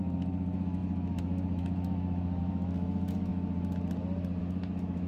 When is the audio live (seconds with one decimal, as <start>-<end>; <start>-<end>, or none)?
3.3-4.4